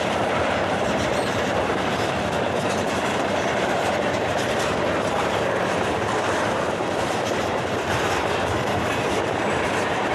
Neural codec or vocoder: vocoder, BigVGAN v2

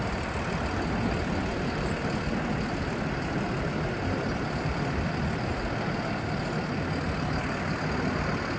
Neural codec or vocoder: none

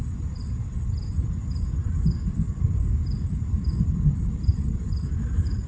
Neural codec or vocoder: none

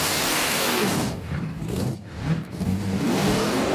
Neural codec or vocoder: codec, DAC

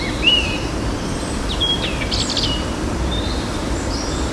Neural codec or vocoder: vocoder, BigVGAN v2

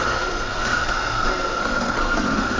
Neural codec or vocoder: codec, SNAC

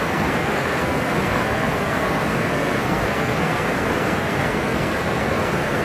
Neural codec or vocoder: codec, SNAC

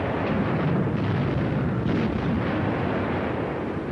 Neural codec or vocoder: none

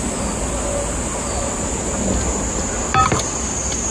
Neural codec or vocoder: none